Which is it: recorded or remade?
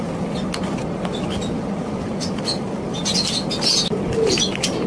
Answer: recorded